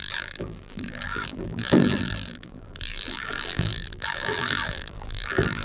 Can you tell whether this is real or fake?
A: fake